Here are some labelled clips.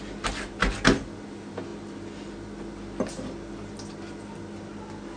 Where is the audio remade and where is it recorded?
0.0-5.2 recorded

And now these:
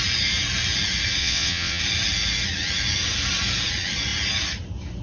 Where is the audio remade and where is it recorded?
0.0-1.2 recorded; 1.2-1.8 remade; 1.8-5.0 recorded

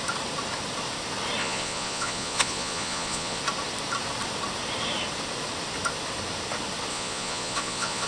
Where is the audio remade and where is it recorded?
0.0-1.4 recorded; 1.4-3.4 remade; 3.4-6.9 recorded; 6.9-8.1 remade

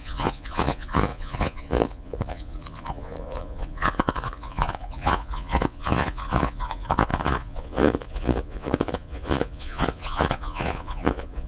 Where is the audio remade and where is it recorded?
0.0-11.5 remade